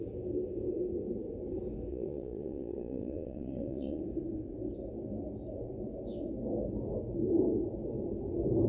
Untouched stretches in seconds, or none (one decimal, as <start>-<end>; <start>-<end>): 0.0-1.9; 4.0-8.7